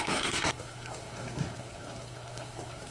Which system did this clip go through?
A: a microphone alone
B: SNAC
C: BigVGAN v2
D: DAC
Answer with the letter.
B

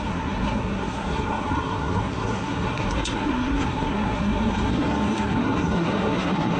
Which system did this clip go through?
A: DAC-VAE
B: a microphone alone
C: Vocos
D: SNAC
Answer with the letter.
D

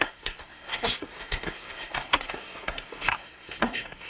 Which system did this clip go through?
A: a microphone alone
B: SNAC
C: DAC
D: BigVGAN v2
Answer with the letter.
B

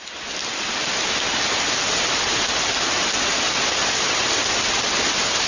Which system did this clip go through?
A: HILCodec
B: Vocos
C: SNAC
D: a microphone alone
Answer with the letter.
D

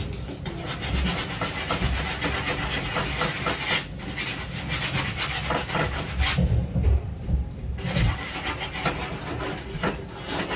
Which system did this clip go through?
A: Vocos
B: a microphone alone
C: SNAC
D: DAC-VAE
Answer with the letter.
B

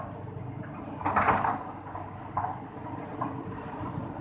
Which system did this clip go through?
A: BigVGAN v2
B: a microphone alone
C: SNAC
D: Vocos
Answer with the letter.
B